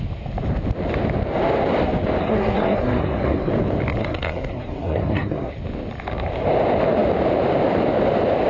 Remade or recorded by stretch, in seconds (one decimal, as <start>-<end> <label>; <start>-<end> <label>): 0.0-2.2 recorded; 2.2-3.5 remade; 3.5-4.0 recorded; 4.0-5.5 remade; 5.5-8.5 recorded